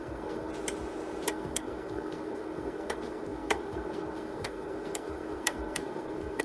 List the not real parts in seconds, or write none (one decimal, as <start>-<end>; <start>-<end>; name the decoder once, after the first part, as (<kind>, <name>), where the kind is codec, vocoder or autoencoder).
0.0-0.5 (codec, SNAC); 1.3-6.4